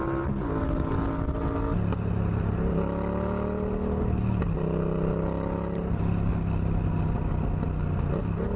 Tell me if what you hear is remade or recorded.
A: recorded